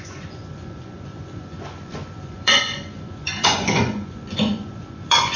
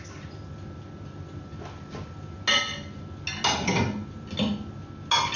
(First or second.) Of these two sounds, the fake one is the first